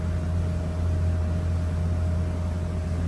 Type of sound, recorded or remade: recorded